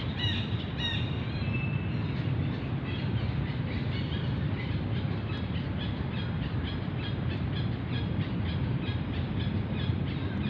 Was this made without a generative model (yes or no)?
yes